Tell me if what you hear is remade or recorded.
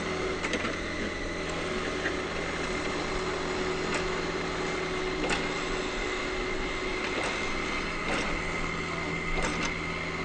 recorded